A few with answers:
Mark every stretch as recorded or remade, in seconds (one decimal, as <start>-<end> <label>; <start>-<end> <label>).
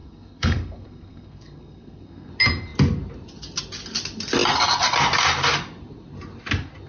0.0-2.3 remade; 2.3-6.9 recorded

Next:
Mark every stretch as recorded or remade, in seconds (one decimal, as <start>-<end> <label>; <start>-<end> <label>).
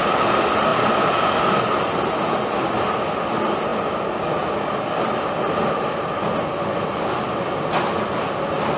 0.0-8.8 recorded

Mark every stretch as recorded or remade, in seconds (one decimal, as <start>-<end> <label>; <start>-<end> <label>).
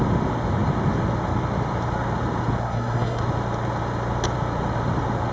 0.0-2.6 recorded; 2.6-3.2 remade; 3.2-5.3 recorded